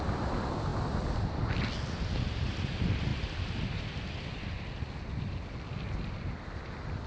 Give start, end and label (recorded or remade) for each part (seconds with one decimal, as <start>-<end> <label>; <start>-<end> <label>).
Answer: 0.0-7.1 recorded